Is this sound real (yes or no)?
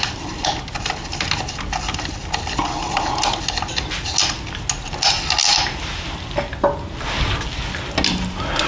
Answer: yes